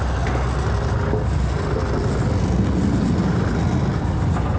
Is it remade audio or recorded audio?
recorded